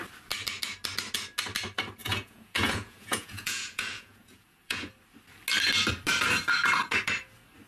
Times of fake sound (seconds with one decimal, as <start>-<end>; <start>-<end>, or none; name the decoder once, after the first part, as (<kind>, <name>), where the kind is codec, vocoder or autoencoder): 2.0-4.9 (vocoder, Vocos)